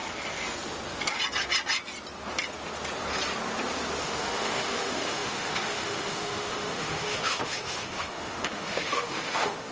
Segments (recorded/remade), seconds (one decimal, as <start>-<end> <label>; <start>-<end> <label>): 0.0-4.0 recorded; 4.0-9.7 remade